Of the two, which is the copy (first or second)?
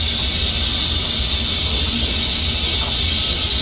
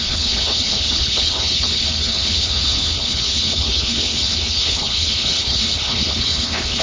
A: second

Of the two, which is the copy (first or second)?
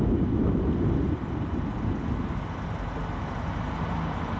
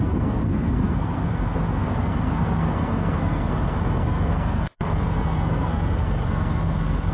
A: second